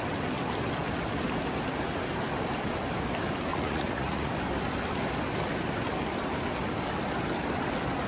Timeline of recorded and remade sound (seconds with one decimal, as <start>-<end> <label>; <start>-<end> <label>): 0.0-3.5 recorded; 3.5-4.3 remade; 4.3-8.1 recorded

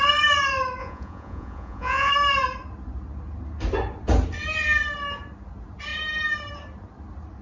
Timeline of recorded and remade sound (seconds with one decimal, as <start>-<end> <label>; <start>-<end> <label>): 0.0-0.8 recorded; 0.8-2.1 remade; 2.1-7.4 recorded

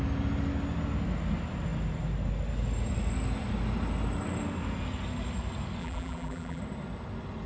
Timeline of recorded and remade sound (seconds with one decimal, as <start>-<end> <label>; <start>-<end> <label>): 0.0-5.8 recorded; 5.8-6.6 remade; 6.6-7.5 recorded

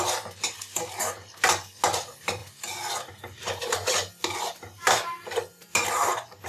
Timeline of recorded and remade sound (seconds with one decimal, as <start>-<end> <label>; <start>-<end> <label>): 0.0-6.5 recorded

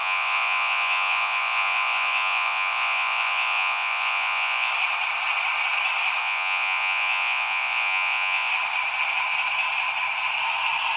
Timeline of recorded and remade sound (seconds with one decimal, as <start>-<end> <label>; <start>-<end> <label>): 0.0-4.7 remade; 4.7-6.2 recorded; 6.2-8.5 remade; 8.5-11.0 recorded

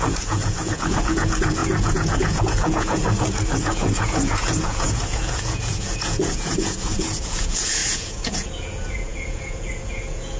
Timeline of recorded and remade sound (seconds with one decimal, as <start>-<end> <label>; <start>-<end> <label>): 0.0-3.0 remade; 3.0-3.6 recorded; 3.6-10.4 remade

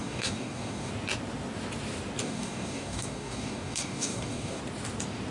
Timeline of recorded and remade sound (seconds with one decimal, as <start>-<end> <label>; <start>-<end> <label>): 0.0-0.9 remade; 0.9-2.2 recorded; 2.2-4.6 remade; 4.6-5.3 recorded

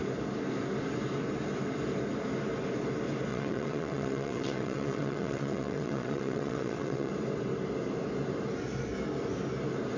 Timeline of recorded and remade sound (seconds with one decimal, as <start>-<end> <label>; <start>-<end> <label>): 0.0-3.3 recorded; 3.3-7.1 remade; 7.1-10.0 recorded